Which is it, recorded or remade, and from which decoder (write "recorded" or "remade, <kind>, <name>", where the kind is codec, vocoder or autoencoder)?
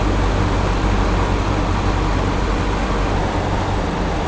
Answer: recorded